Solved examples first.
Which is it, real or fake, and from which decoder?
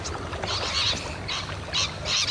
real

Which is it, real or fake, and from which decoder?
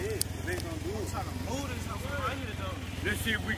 real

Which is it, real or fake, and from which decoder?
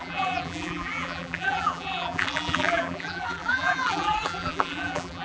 fake, vocoder, BigVGAN v2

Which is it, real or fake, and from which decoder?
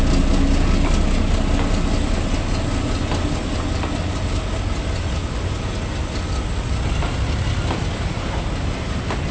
real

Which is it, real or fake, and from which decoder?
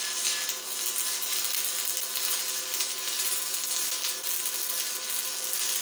real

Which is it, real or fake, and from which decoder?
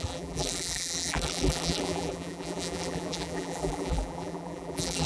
fake, vocoder, BigVGAN v2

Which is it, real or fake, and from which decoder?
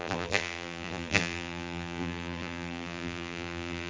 fake, vocoder, BigVGAN v2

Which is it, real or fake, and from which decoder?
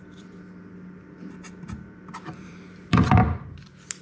fake, vocoder, BigVGAN v2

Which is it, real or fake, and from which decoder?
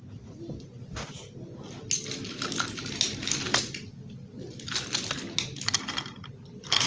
real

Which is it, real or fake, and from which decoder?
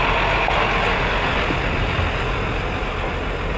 real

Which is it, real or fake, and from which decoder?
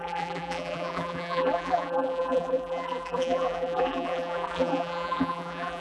fake, vocoder, BigVGAN v2